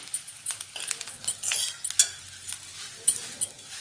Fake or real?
real